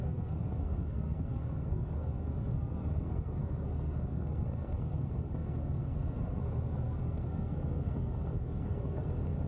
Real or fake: fake